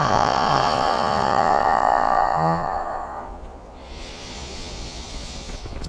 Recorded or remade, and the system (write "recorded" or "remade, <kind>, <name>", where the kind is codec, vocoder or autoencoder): remade, vocoder, Vocos